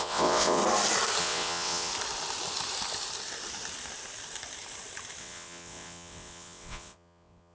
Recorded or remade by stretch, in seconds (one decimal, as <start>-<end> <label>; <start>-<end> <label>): 0.0-0.6 remade; 0.6-1.2 recorded; 1.2-1.9 remade; 1.9-5.2 recorded; 5.2-7.5 remade